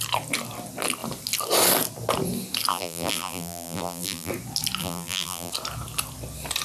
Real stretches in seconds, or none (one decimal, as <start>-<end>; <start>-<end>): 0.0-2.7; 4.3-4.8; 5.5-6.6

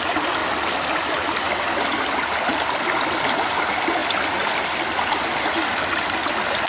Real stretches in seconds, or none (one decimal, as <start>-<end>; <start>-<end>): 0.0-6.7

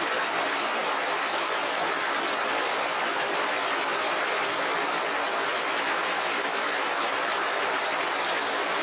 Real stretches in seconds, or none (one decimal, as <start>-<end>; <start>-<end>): 0.0-8.8

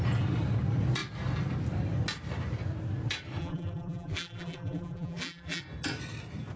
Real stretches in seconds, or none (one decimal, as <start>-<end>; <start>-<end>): 0.0-3.4; 5.6-6.6

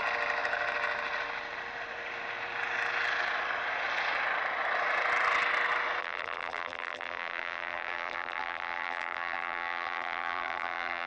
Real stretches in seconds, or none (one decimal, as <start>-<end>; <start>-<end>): 0.0-6.0

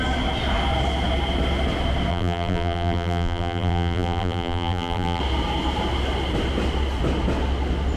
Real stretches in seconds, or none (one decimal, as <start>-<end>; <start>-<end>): 0.0-2.1; 5.2-8.0